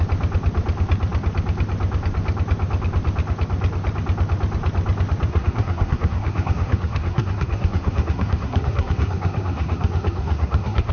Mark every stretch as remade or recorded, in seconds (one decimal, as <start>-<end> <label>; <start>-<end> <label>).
0.0-5.3 recorded; 5.3-10.9 remade